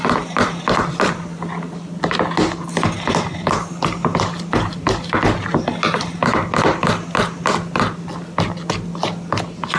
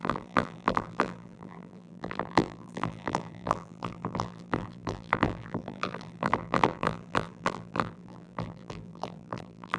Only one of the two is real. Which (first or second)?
first